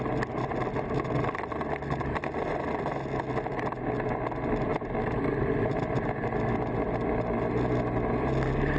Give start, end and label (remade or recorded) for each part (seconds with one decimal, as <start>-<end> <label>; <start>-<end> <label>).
0.0-8.8 recorded

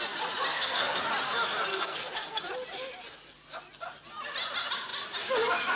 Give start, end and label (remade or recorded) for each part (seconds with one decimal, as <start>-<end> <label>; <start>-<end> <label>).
0.0-0.5 recorded; 0.5-1.0 remade; 1.0-1.7 recorded; 1.7-2.4 remade; 2.4-5.8 recorded